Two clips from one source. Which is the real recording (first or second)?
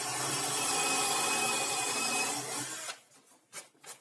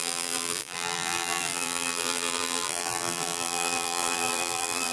first